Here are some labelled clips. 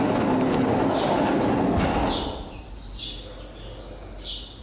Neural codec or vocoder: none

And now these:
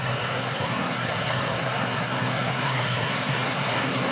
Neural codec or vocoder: codec, SNAC